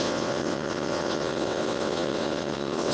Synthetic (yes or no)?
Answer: yes